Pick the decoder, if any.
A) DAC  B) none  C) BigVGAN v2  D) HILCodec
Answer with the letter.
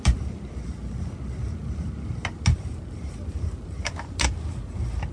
B